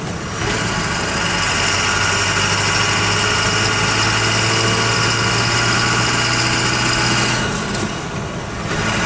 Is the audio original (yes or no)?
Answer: yes